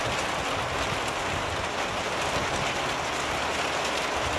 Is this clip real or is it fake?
real